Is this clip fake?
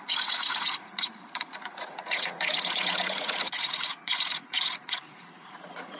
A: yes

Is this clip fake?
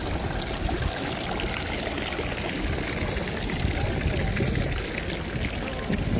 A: no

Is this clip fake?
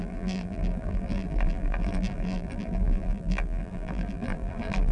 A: yes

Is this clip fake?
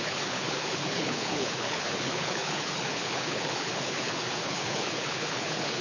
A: yes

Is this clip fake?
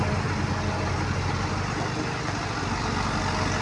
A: no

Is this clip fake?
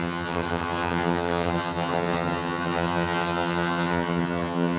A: yes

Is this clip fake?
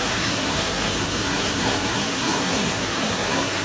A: yes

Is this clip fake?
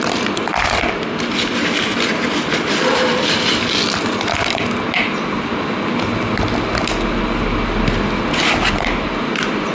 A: no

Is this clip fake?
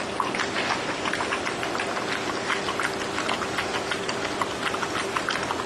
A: no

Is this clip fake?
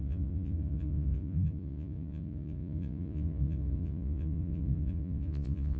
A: yes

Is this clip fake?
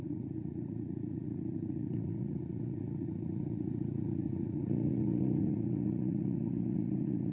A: yes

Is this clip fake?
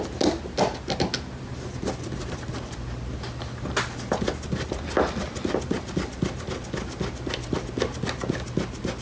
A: no